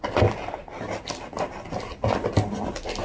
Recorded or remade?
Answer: recorded